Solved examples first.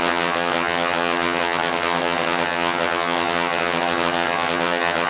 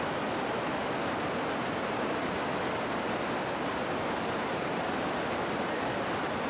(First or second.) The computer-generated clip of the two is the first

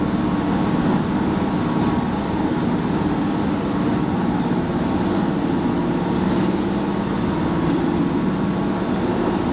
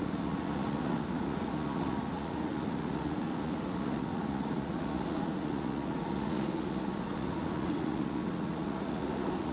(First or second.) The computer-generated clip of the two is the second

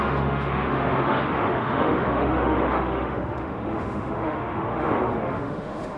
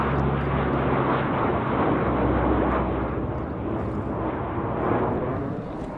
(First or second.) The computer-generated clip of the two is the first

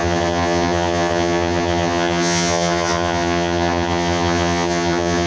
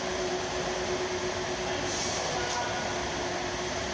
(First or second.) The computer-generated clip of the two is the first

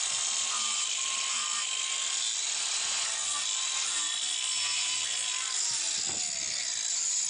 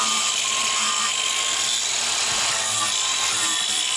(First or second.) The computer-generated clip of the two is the second